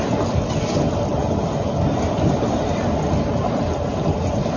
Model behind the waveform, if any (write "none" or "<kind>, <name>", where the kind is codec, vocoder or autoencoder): none